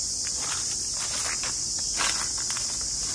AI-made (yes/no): no